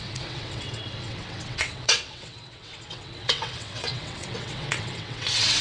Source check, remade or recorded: remade